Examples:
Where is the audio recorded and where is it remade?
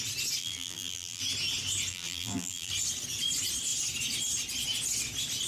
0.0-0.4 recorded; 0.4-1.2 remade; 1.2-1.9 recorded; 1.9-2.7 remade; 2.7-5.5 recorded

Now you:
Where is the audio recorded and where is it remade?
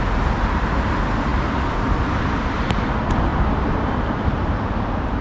0.0-1.3 recorded; 1.3-2.9 remade; 2.9-3.3 recorded; 3.3-5.2 remade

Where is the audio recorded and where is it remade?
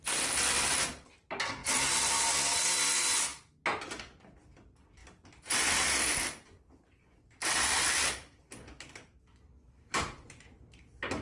0.0-5.0 recorded; 5.0-10.0 remade; 10.0-11.2 recorded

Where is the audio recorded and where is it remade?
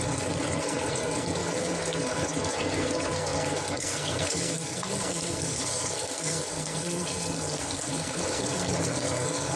0.0-9.6 remade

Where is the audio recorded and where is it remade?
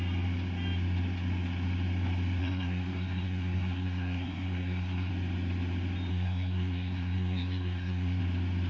0.0-2.4 recorded; 2.4-5.1 remade; 5.1-6.1 recorded; 6.1-8.2 remade; 8.2-8.7 recorded